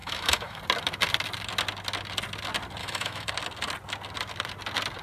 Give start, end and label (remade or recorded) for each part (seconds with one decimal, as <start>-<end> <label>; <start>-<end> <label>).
0.0-0.6 remade; 0.6-2.8 recorded; 2.8-3.3 remade; 3.3-5.0 recorded